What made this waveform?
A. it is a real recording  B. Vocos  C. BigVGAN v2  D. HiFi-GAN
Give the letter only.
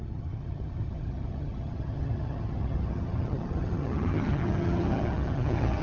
D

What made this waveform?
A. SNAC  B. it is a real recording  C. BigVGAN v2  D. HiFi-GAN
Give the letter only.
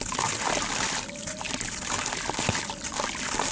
B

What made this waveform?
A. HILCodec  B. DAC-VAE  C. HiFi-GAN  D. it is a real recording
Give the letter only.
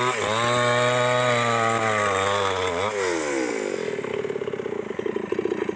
D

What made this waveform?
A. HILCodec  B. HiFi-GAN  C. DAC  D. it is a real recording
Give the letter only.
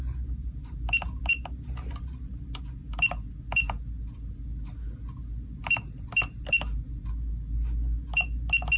D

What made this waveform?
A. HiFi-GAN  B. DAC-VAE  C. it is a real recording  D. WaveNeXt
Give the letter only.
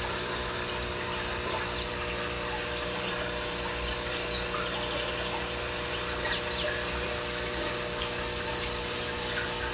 C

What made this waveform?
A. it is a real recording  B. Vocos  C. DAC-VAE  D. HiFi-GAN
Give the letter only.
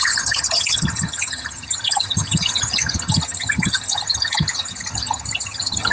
D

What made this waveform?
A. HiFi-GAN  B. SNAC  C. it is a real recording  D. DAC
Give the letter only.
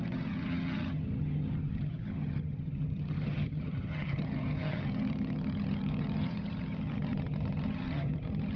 A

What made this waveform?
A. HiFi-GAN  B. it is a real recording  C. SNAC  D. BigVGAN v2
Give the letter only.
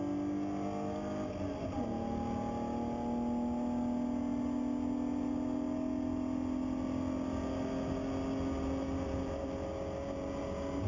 B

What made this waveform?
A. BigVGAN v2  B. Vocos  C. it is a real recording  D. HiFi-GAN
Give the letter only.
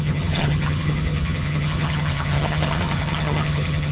D